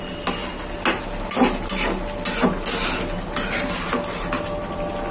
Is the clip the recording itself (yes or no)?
yes